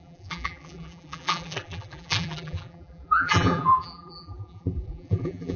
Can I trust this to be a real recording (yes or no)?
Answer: no